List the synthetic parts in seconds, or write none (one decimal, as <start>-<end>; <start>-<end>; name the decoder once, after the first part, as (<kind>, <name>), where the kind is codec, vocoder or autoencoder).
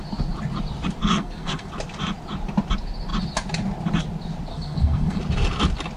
1.0-1.7 (codec, SNAC); 4.5-5.2